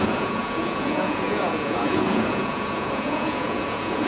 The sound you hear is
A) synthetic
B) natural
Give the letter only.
A